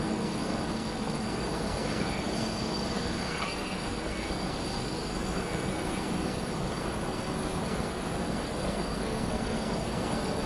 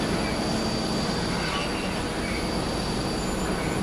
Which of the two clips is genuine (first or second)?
second